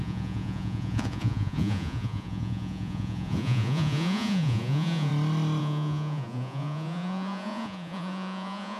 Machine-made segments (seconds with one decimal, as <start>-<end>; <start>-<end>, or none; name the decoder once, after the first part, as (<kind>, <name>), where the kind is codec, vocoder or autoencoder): 0.0-5.1 (vocoder, Vocos); 5.6-8.8